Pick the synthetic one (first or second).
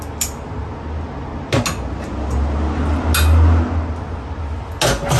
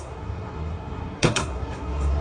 second